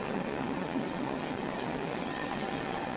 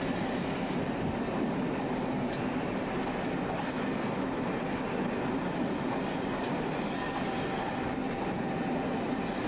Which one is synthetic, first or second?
first